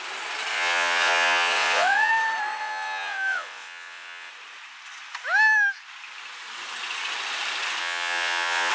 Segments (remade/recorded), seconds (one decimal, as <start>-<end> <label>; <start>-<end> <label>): 0.0-0.5 recorded; 0.5-2.1 remade; 2.1-2.6 recorded; 2.6-4.3 remade; 4.3-7.8 recorded; 7.8-8.7 remade